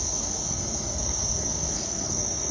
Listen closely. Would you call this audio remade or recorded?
remade